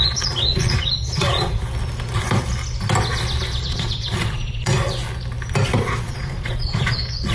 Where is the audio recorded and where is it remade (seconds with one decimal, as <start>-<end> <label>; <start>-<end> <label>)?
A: 0.0-1.6 remade; 1.6-3.6 recorded; 3.6-4.7 remade; 4.7-5.8 recorded; 5.8-7.3 remade